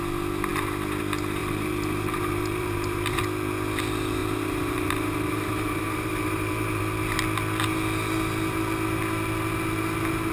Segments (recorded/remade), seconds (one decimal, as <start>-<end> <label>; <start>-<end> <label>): 0.0-1.4 recorded; 1.4-3.2 remade; 3.2-4.2 recorded; 4.2-6.8 remade; 6.8-10.3 recorded